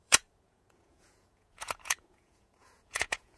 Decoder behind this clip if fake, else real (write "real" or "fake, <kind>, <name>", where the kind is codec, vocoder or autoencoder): fake, vocoder, Vocos